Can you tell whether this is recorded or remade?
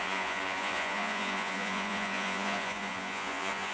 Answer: remade